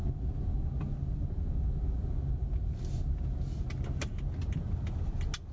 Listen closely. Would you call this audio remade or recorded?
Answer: recorded